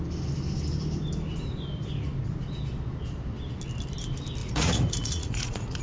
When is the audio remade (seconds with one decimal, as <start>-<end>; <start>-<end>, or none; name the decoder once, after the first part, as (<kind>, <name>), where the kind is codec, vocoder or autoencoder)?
4.4-5.8 (vocoder, Vocos)